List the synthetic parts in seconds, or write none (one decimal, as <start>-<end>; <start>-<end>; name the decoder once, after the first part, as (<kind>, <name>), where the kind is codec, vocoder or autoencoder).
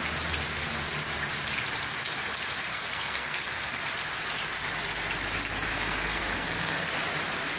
2.7-3.8 (codec, SNAC); 5.7-6.9